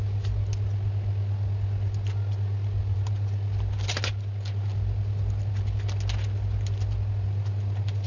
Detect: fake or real real